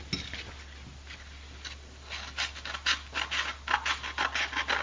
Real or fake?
real